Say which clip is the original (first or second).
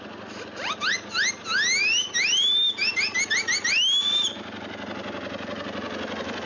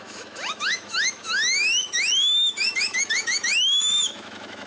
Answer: first